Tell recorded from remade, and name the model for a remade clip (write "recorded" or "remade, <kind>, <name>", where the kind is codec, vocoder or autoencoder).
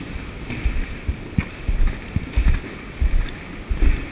recorded